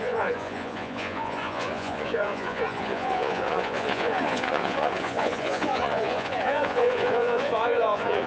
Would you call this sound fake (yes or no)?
yes